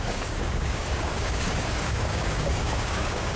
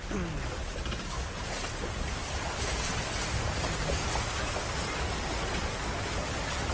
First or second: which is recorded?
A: second